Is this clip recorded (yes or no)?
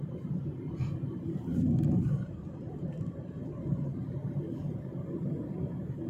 yes